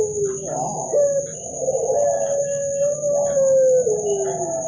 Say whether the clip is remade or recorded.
recorded